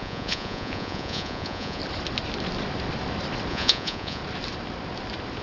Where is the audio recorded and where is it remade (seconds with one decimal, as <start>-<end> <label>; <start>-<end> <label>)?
0.0-1.8 remade; 1.8-3.5 recorded; 3.5-4.2 remade; 4.2-5.4 recorded

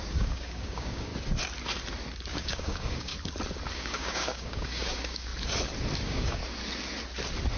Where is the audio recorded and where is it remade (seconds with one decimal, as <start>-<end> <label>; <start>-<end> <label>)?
0.0-1.1 remade; 1.1-2.3 recorded; 2.3-3.1 remade; 3.1-3.7 recorded; 3.7-5.3 remade; 5.3-6.0 recorded; 6.0-6.4 remade; 6.4-7.6 recorded

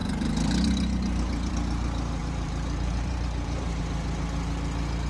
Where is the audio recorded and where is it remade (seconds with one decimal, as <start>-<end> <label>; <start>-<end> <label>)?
0.0-1.5 remade; 1.5-2.2 recorded; 2.2-3.8 remade; 3.8-5.1 recorded

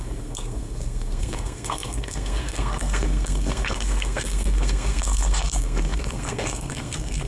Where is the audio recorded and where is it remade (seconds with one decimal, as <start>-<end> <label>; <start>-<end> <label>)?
0.0-7.3 remade

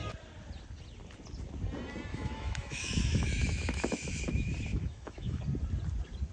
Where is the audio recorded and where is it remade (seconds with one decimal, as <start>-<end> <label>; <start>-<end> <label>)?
0.0-2.1 recorded; 2.1-4.2 remade; 4.2-4.7 recorded; 4.7-5.4 remade; 5.4-6.3 recorded

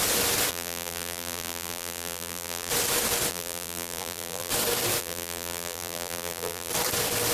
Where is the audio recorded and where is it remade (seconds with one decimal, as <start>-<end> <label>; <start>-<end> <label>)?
0.0-0.5 recorded; 0.5-2.7 remade; 2.7-3.3 recorded; 3.3-4.5 remade; 4.5-5.0 recorded; 5.0-6.7 remade; 6.7-7.3 recorded

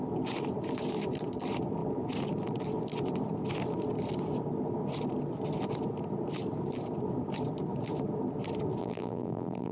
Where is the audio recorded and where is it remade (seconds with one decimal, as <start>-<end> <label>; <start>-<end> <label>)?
0.0-8.8 recorded; 8.8-9.7 remade